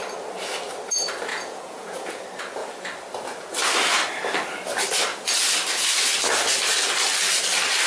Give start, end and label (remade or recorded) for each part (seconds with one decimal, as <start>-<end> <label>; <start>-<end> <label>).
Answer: 0.0-1.3 recorded; 1.3-2.2 remade; 2.2-7.9 recorded